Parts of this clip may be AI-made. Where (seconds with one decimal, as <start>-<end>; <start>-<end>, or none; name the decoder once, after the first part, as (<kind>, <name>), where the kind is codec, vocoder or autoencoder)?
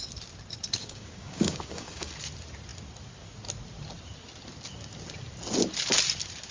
0.8-2.1 (codec, DAC)